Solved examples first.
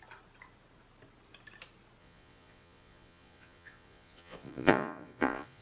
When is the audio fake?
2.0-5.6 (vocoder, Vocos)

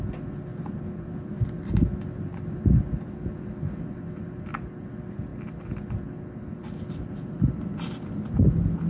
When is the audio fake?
none

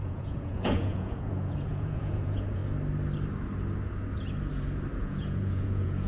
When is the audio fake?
0.0-2.6 (vocoder, Vocos); 5.0-6.1

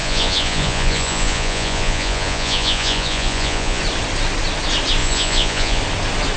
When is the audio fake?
0.0-3.8 (vocoder, Vocos); 5.0-5.8

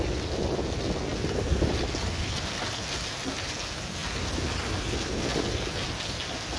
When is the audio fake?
none